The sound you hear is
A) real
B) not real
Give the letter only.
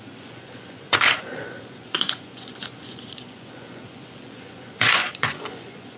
B